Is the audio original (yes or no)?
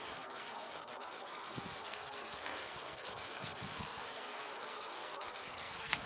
no